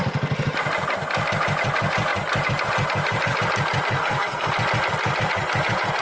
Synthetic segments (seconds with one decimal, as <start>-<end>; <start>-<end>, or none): 4.0-4.5